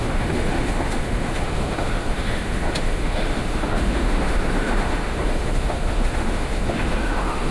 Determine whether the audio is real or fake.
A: fake